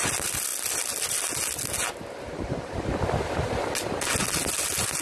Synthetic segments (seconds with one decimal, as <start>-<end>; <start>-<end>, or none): none